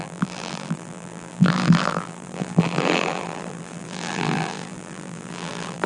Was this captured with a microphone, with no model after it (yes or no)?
no